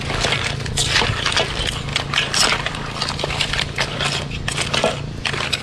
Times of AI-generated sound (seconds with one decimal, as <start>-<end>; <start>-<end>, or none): 1.9-5.6